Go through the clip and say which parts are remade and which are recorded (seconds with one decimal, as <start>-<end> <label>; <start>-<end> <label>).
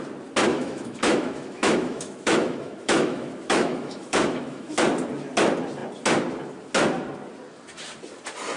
0.0-0.5 recorded; 0.5-4.8 remade; 4.8-8.6 recorded